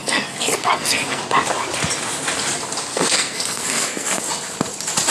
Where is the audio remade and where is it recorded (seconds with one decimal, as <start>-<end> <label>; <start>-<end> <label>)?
0.0-1.2 remade; 1.2-2.9 recorded; 2.9-4.2 remade; 4.2-5.1 recorded